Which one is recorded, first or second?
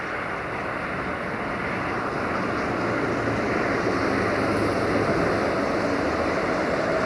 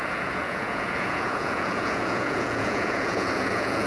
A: first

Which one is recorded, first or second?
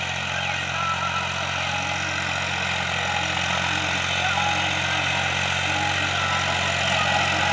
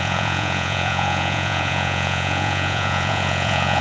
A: first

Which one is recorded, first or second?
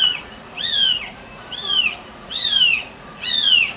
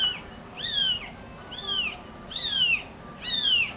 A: second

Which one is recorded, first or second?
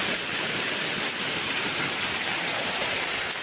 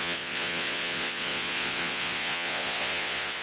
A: first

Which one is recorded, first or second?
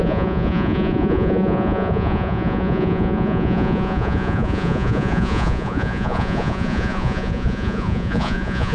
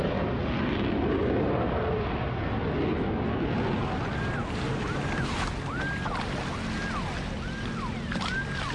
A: second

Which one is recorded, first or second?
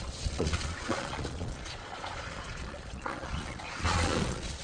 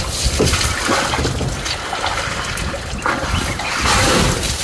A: second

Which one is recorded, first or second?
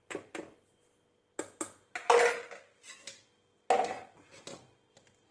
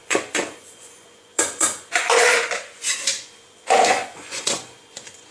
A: first